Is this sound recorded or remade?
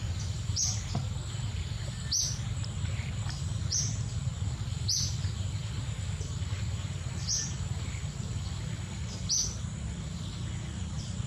recorded